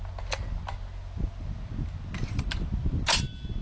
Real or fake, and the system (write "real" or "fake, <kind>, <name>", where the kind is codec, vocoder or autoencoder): real